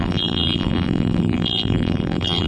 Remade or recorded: remade